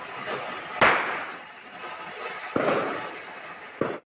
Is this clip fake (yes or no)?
yes